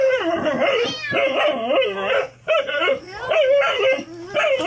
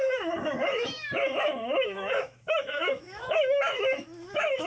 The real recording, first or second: first